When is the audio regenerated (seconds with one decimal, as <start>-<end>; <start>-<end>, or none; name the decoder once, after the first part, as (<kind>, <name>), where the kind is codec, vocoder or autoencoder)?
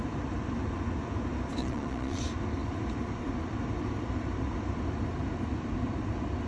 1.6-2.2 (vocoder, Vocos)